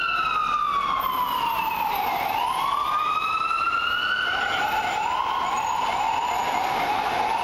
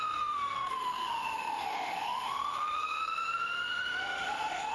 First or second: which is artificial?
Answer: second